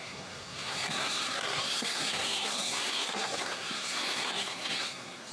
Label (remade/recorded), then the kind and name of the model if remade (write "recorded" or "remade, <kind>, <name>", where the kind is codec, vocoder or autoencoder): remade, codec, SNAC